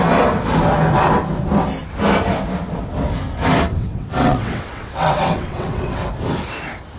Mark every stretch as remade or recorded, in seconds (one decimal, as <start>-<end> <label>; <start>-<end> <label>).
0.0-3.7 recorded; 3.7-6.1 remade; 6.1-7.0 recorded